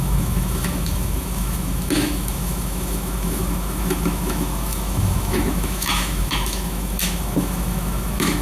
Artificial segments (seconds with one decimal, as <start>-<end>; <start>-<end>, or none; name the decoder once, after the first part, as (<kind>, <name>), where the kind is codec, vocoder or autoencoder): 0.0-8.4 (autoencoder, DAC-VAE)